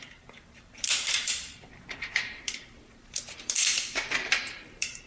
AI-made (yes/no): yes